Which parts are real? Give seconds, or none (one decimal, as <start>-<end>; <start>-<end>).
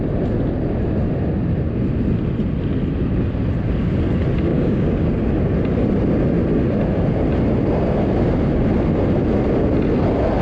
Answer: 0.0-4.5; 5.2-10.4